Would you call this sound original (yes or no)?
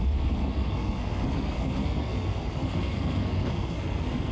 no